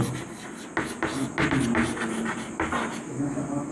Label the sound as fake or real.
real